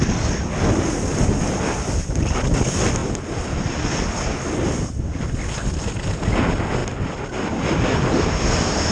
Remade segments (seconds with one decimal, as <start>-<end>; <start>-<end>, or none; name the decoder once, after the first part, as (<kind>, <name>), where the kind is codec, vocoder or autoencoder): none